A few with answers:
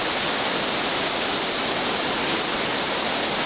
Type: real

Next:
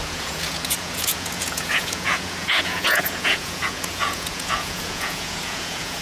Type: fake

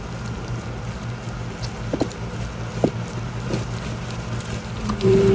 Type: real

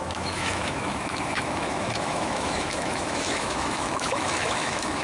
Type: fake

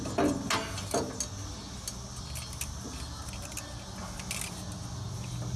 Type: real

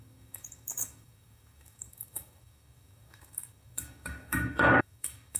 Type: fake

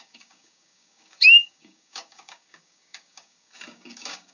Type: fake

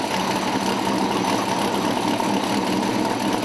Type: real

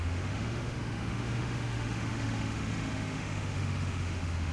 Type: fake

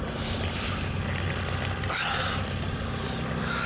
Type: real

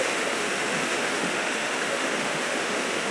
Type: fake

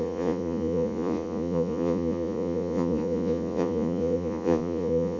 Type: fake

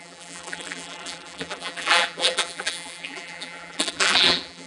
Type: fake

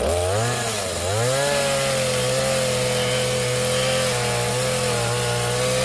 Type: real